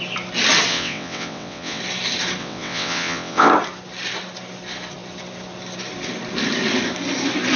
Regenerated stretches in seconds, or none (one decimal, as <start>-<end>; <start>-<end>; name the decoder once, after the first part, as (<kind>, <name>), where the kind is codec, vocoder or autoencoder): 0.7-1.8 (vocoder, WaveNeXt); 2.4-3.5